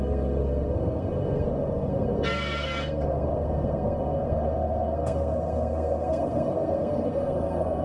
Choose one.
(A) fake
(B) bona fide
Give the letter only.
A